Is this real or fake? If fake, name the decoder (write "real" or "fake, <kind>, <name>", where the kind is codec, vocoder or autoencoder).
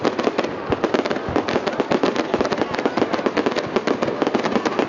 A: real